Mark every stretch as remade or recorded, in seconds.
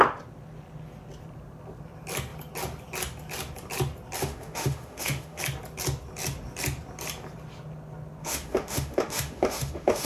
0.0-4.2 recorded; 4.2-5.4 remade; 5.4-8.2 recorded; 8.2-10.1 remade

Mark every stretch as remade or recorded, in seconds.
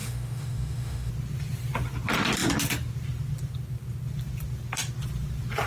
0.0-1.1 remade; 1.1-5.7 recorded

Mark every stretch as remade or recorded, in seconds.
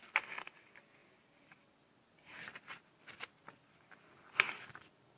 0.0-5.2 recorded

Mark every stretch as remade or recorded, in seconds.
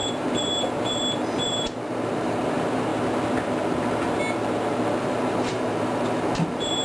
0.0-2.9 remade; 2.9-5.0 recorded; 5.0-6.8 remade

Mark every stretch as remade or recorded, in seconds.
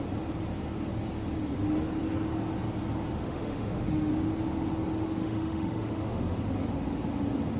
0.0-3.1 recorded; 3.1-4.1 remade; 4.1-5.2 recorded; 5.2-6.2 remade; 6.2-7.6 recorded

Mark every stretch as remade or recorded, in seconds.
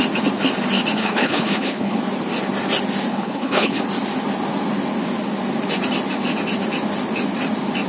0.0-1.0 recorded; 1.0-2.0 remade; 2.0-3.1 recorded; 3.1-3.8 remade; 3.8-7.9 recorded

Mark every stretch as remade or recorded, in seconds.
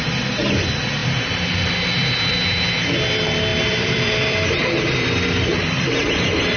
0.0-3.5 recorded; 3.5-6.6 remade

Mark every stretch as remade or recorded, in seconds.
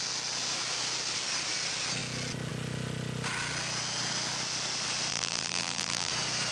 0.0-5.1 recorded; 5.1-6.1 remade; 6.1-6.5 recorded